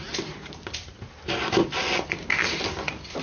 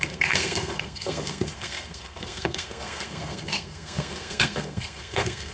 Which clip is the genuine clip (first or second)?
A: first